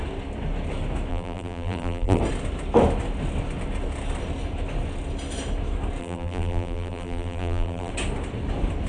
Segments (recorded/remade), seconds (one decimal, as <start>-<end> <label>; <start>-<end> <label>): 0.0-1.1 recorded; 1.1-2.2 remade; 2.2-6.0 recorded; 6.0-7.9 remade; 7.9-8.9 recorded